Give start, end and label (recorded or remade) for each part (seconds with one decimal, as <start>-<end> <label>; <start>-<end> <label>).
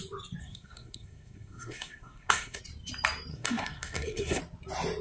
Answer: 0.0-0.4 recorded; 0.4-2.6 remade; 2.6-3.3 recorded; 3.3-4.4 remade; 4.4-5.0 recorded